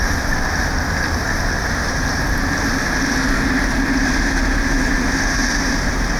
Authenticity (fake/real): real